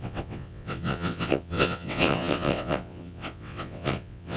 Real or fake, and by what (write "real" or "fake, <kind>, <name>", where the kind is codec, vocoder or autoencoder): fake, vocoder, WaveNeXt